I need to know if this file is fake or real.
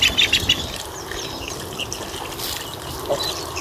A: real